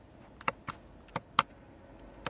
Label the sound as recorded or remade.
recorded